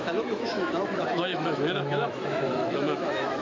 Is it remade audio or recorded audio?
remade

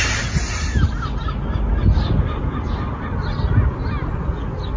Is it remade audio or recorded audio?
recorded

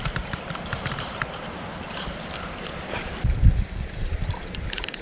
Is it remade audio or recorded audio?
remade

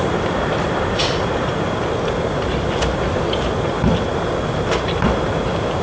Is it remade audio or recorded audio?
recorded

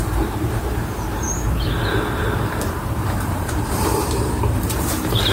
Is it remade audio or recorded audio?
remade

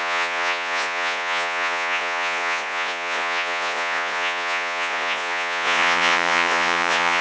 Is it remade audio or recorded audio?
remade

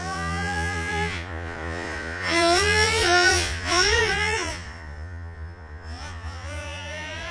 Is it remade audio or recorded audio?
remade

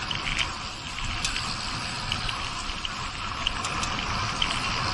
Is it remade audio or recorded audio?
recorded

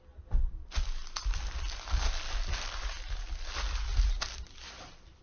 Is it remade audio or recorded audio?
recorded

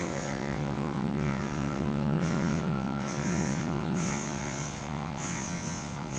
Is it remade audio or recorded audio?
remade